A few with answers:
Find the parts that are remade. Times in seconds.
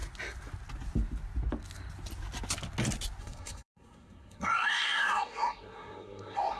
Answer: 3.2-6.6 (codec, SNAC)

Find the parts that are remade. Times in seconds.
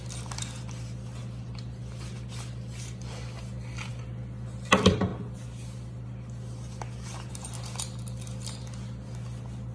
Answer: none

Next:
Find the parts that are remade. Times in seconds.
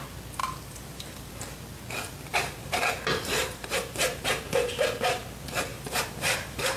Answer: 0.4-1.3 (vocoder, BigVGAN v2); 2.3-2.8; 3.4-4.3; 5.7-6.8